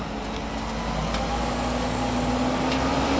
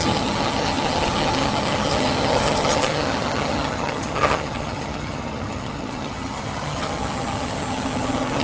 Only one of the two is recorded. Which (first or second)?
first